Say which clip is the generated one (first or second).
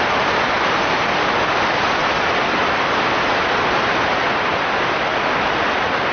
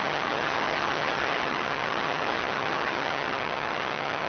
second